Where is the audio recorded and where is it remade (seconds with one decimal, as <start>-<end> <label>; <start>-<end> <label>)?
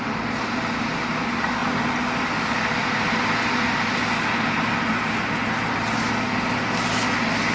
0.0-7.5 recorded